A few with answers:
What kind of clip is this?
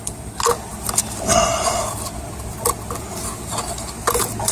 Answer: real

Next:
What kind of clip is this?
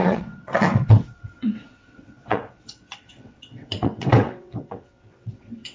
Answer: fake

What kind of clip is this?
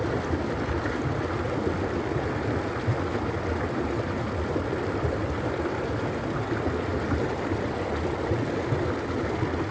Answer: real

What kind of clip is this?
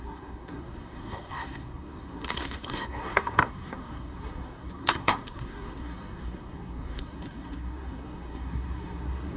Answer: fake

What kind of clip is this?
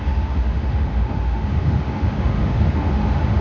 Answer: fake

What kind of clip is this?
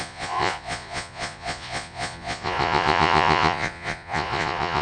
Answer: fake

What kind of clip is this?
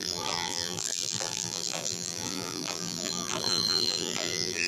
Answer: fake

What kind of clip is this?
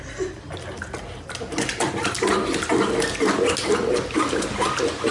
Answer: real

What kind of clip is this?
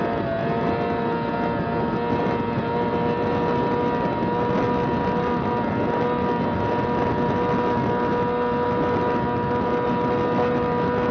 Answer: real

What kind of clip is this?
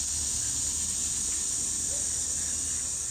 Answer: real